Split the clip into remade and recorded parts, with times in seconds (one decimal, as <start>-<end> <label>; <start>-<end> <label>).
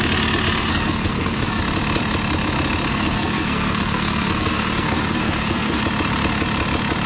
0.0-0.7 recorded; 0.7-1.6 remade; 1.6-2.9 recorded; 2.9-5.8 remade; 5.8-7.1 recorded